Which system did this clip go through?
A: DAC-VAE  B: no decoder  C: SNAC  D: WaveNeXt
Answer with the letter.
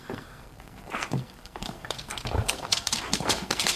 C